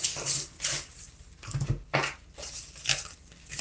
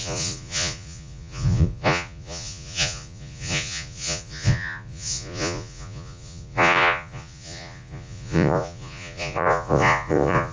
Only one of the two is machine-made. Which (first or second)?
second